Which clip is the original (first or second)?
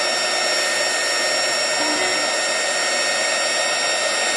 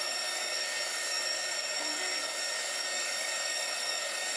first